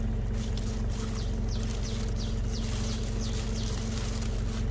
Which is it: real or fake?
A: real